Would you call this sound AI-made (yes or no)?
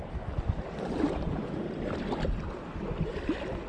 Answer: no